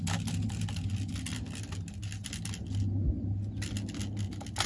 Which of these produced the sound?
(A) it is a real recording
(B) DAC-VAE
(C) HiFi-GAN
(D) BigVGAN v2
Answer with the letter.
A